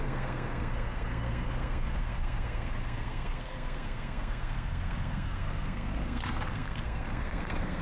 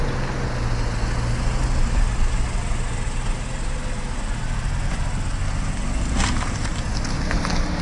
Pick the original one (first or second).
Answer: second